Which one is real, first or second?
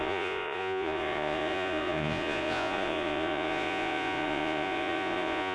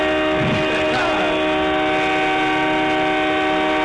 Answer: second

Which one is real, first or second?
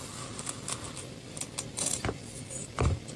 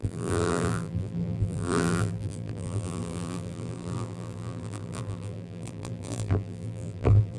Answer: first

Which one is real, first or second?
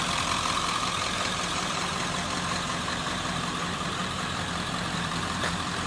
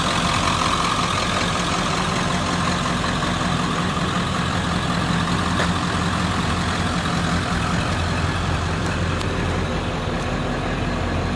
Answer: second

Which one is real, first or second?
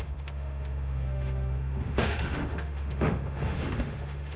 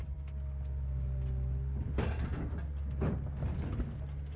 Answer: second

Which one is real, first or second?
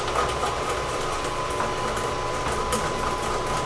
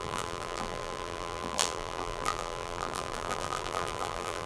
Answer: first